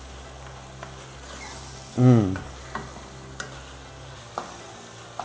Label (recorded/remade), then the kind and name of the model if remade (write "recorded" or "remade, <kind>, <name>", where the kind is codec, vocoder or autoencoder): recorded